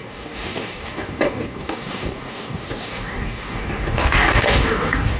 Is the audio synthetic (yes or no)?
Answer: yes